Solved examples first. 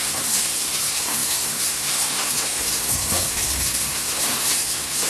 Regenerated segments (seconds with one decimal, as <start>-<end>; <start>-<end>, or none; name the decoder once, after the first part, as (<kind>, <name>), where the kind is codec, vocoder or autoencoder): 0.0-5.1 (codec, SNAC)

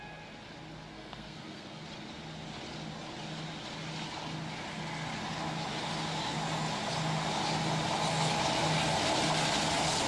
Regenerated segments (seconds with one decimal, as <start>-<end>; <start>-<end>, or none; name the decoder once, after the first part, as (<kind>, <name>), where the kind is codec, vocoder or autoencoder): 0.9-1.8 (codec, SNAC)

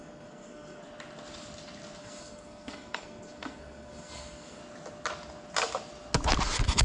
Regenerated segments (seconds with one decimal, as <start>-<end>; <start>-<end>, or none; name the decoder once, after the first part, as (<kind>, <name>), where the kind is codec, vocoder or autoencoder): 0.0-0.8 (codec, SNAC); 2.0-4.6

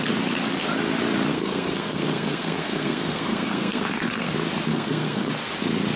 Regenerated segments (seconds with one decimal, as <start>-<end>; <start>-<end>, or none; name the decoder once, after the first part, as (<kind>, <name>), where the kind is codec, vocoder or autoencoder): 1.3-4.3 (codec, SNAC); 4.7-5.3

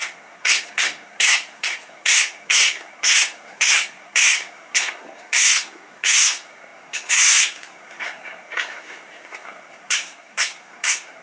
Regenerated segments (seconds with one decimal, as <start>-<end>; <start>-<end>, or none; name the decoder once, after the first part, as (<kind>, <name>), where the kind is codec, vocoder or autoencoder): 0.0-11.2 (codec, SNAC)

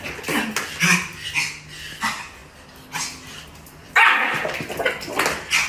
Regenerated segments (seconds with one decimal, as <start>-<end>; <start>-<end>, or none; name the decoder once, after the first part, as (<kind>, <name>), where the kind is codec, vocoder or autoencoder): none